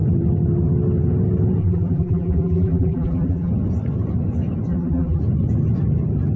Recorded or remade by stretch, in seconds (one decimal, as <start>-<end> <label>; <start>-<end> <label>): 0.0-1.6 recorded; 1.6-3.5 remade; 3.5-4.7 recorded; 4.7-5.2 remade; 5.2-6.4 recorded